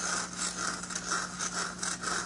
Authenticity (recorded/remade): recorded